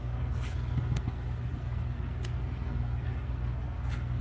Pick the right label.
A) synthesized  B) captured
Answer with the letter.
A